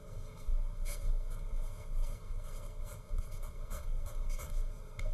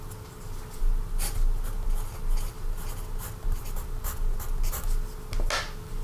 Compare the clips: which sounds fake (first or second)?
first